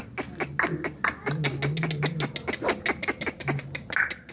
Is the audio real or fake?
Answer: real